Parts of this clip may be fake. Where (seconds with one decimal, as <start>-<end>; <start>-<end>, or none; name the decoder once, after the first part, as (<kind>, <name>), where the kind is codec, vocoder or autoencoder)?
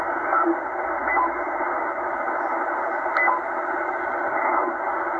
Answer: none